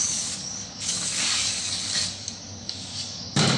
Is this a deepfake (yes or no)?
yes